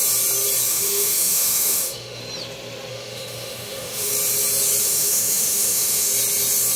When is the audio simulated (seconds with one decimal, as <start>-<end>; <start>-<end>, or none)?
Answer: 0.7-2.2; 2.9-4.1; 4.8-6.1